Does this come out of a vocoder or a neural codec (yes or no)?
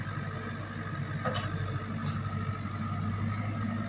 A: no